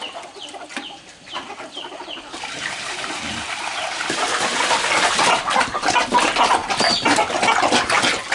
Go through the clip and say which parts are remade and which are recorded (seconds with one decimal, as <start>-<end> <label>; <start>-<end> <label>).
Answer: 0.0-0.7 recorded; 0.7-5.4 remade; 5.4-8.3 recorded